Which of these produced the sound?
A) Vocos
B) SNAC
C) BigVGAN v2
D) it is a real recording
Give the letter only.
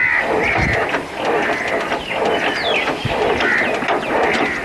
D